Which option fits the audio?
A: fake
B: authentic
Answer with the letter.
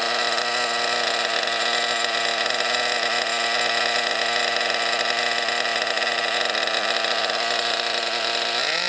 B